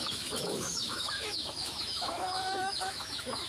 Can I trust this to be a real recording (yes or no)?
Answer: no